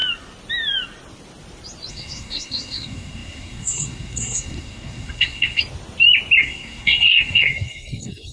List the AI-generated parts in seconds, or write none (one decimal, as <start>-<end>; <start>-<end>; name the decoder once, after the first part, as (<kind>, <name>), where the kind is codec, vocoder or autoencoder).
1.9-5.6 (codec, SNAC); 6.4-8.3